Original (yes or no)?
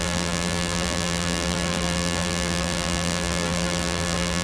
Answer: no